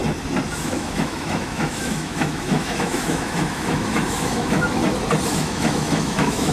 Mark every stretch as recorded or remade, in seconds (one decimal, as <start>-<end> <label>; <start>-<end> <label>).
0.0-0.6 recorded; 0.6-4.8 remade; 4.8-5.3 recorded; 5.3-6.5 remade